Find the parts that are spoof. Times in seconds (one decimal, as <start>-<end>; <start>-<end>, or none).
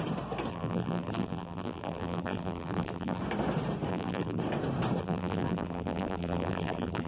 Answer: 0.5-3.2; 3.9-4.4; 5.0-7.1